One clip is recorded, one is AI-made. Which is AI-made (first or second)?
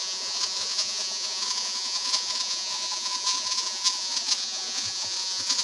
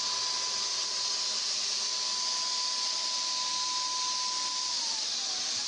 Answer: first